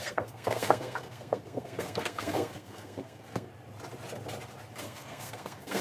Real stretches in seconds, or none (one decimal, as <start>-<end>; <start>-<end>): 3.5-4.8